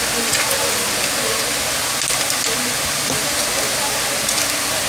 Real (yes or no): yes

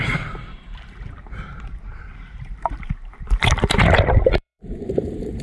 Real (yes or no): no